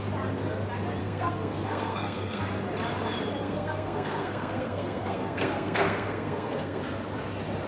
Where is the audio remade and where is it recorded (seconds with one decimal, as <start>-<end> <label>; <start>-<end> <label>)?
0.0-1.0 recorded; 1.0-2.4 remade; 2.4-3.4 recorded; 3.4-6.8 remade; 6.8-7.7 recorded